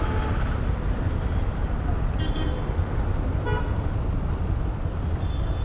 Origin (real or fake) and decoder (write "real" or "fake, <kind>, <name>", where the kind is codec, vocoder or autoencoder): real